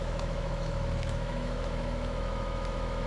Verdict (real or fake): fake